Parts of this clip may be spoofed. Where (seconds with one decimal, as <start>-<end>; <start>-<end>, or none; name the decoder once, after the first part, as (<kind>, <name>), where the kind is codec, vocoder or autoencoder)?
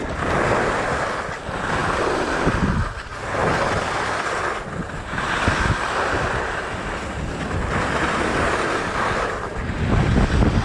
none